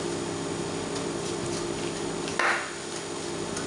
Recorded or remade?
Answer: recorded